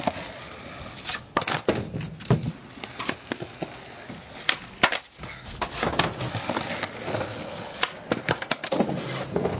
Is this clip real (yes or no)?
yes